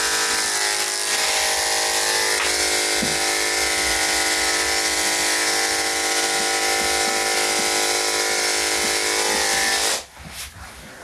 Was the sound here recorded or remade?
recorded